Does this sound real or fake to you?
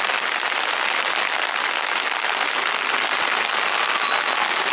real